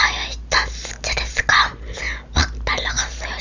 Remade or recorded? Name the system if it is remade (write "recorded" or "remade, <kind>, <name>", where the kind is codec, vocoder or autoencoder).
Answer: recorded